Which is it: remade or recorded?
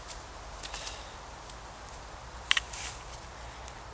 recorded